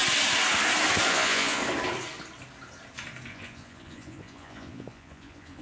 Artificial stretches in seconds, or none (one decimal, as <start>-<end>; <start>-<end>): 1.1-1.6; 3.3-5.6